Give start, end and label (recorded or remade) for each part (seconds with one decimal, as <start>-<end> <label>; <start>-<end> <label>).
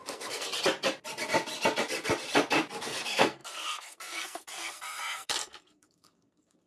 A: 0.0-0.5 remade; 0.5-2.8 recorded; 2.8-6.7 remade